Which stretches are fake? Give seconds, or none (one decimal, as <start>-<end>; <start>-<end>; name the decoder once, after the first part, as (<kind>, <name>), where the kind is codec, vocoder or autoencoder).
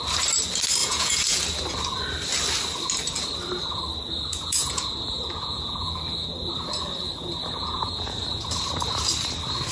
0.8-1.4 (vocoder, Vocos); 4.3-6.0; 7.6-8.2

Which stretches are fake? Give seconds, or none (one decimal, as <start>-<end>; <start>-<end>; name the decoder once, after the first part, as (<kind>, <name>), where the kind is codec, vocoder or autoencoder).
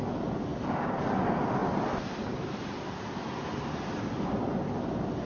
none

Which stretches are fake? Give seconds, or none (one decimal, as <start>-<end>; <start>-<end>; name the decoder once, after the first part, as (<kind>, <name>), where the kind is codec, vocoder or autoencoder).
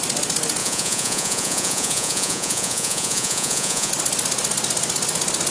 0.6-3.9 (vocoder, Vocos)